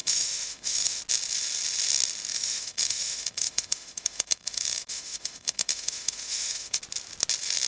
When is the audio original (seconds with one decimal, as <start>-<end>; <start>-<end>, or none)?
1.0-2.3; 6.8-7.7